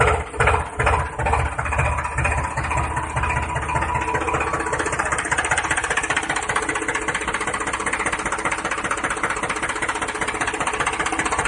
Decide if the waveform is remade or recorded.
recorded